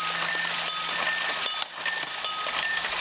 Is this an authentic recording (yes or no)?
yes